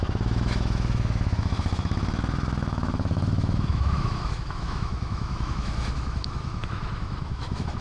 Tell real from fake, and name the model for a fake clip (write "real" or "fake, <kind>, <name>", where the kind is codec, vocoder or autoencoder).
fake, autoencoder, DAC-VAE